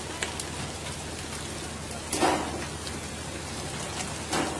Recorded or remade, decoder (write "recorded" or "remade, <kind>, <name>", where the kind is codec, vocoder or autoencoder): recorded